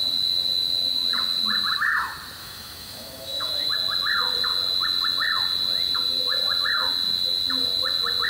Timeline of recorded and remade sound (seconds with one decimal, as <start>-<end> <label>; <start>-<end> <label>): 0.0-2.4 recorded; 2.4-3.7 remade; 3.7-8.3 recorded